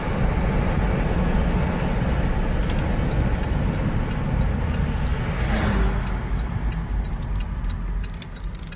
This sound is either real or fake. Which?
real